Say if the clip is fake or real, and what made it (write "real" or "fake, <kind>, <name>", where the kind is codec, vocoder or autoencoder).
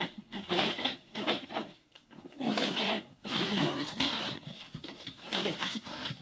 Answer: fake, codec, SNAC